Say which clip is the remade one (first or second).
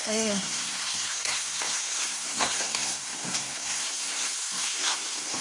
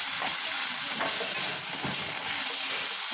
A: first